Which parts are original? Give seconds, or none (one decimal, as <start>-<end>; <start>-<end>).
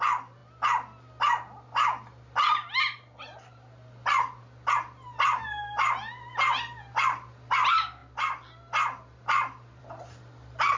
0.0-10.8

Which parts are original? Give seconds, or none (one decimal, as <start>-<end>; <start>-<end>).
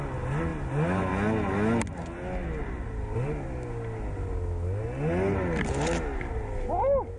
0.0-7.2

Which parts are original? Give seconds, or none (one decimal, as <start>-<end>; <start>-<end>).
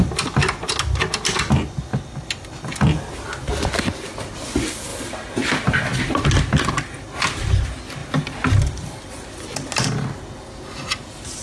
0.0-11.4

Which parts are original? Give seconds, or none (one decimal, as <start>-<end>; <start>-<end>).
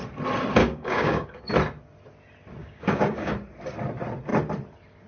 0.0-0.6; 1.4-2.6; 3.3-5.1